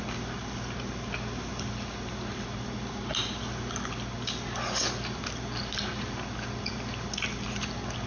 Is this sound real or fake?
real